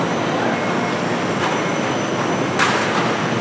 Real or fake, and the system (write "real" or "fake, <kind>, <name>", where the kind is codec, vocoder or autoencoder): real